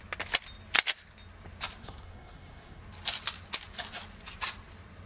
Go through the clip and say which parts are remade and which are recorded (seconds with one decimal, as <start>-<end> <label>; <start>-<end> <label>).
0.0-1.8 recorded; 1.8-2.8 remade; 2.8-5.1 recorded